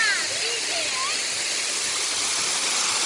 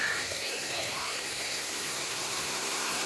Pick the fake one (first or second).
second